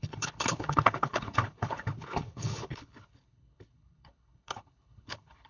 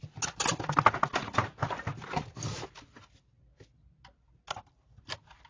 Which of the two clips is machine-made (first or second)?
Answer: first